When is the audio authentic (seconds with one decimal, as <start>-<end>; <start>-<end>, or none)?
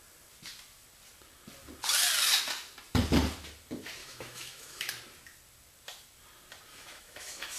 0.0-4.0; 4.9-6.7